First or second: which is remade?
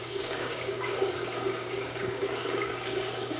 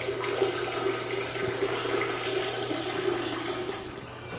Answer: first